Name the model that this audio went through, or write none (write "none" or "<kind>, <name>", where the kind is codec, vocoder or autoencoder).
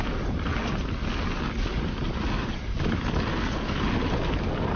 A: none